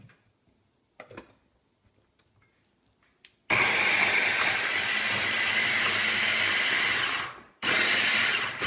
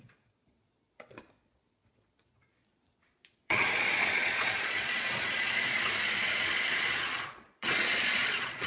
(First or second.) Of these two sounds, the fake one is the second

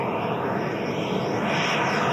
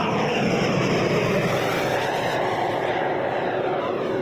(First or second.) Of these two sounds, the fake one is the second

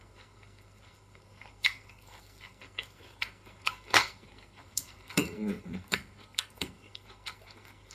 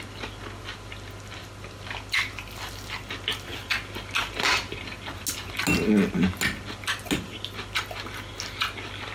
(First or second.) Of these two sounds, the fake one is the first